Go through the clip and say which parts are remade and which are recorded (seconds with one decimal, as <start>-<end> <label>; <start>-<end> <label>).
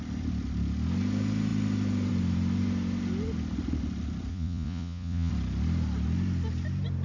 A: 0.0-4.3 recorded; 4.3-5.3 remade; 5.3-7.0 recorded